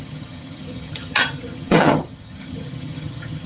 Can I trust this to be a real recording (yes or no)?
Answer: no